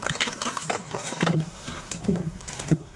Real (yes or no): no